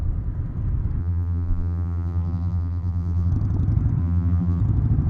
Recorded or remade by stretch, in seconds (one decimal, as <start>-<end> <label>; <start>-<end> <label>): 0.0-1.0 recorded; 1.0-3.3 remade; 3.3-4.0 recorded; 4.0-4.6 remade; 4.6-5.1 recorded